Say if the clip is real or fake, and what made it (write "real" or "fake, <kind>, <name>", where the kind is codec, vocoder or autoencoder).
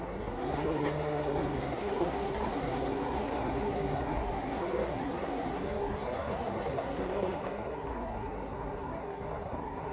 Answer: fake, codec, SNAC